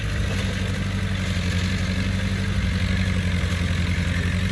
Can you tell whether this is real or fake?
real